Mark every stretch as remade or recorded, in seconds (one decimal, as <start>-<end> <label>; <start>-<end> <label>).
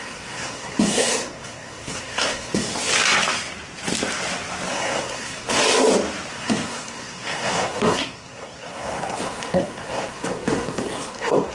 0.0-2.7 remade; 2.7-4.7 recorded; 4.7-5.6 remade; 5.6-6.3 recorded; 6.3-11.5 remade